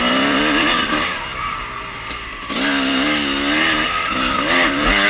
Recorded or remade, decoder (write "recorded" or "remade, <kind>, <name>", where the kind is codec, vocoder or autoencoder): recorded